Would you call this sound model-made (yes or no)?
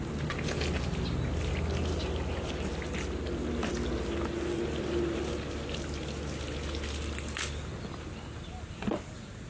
no